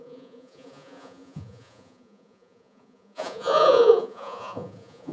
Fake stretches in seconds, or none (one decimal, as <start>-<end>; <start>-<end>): 0.0-5.1